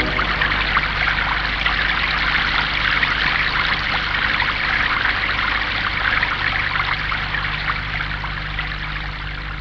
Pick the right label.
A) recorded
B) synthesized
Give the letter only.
A